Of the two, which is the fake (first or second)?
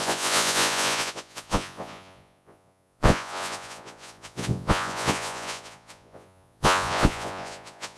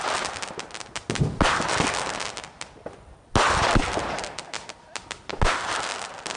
first